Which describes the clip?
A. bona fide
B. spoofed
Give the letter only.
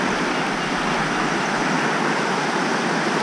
A